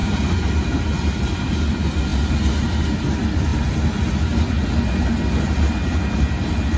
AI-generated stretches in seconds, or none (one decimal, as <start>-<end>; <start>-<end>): none

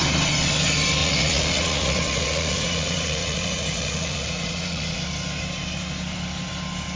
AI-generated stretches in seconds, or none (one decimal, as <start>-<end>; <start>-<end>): 1.0-5.0

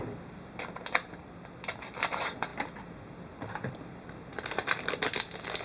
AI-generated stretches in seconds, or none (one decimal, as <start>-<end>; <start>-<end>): none

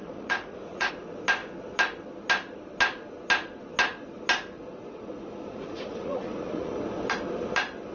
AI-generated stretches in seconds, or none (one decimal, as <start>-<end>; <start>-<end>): 0.0-0.9; 4.9-6.7

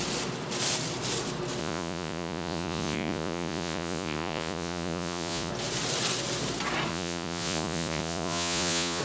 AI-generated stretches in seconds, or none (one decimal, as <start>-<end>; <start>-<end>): 1.6-5.5; 6.9-9.0